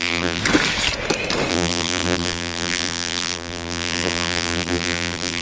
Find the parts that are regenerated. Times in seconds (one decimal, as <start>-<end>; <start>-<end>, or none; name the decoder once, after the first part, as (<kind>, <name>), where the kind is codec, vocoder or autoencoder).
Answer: 0.0-0.4 (vocoder, BigVGAN v2); 1.5-5.4